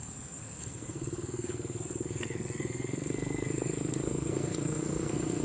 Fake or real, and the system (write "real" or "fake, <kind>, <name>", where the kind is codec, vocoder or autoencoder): fake, codec, SNAC